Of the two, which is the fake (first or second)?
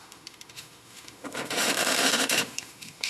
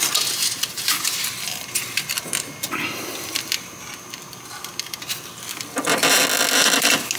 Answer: first